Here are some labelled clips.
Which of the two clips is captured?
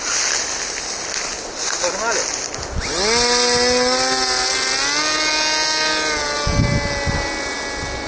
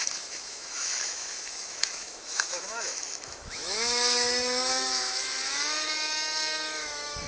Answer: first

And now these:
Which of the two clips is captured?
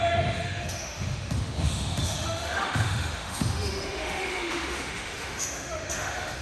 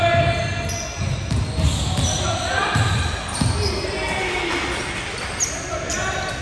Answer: second